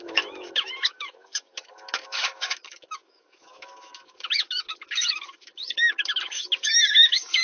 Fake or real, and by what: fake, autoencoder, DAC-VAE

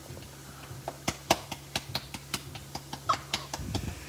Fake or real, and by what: real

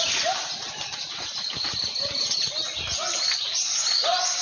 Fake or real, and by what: real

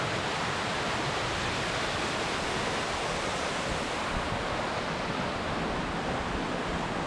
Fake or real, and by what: real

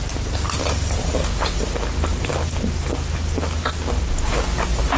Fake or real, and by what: real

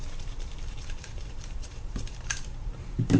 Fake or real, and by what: fake, vocoder, BigVGAN v2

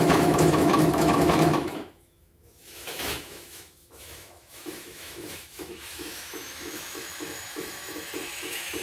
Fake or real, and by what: fake, autoencoder, DAC-VAE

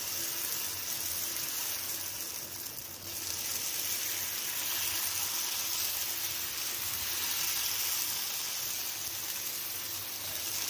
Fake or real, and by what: real